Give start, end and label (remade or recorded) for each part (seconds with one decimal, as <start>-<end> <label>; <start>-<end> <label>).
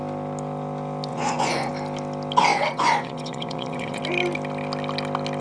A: 0.0-1.1 recorded; 1.1-1.7 remade; 1.7-2.5 recorded; 2.5-4.0 remade; 4.0-5.4 recorded